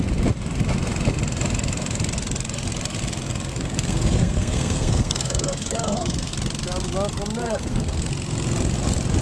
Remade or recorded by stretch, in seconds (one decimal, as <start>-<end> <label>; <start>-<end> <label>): 0.0-3.5 recorded; 3.5-6.3 remade; 6.3-7.4 recorded; 7.4-8.1 remade; 8.1-9.2 recorded